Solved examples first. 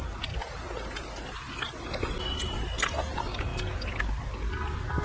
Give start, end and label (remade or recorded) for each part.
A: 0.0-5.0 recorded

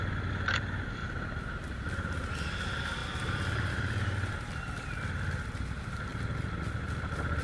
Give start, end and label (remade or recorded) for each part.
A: 0.0-1.0 remade; 1.0-2.3 recorded; 2.3-6.1 remade; 6.1-7.4 recorded